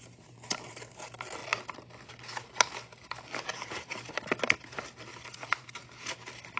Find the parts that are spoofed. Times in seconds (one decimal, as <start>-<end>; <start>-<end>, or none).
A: none